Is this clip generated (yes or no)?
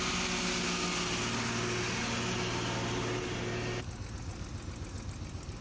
no